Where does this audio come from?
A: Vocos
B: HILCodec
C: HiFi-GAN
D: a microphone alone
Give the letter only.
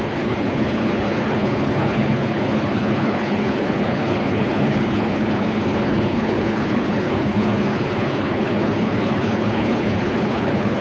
B